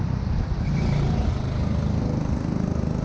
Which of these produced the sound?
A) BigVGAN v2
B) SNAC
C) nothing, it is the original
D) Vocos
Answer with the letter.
C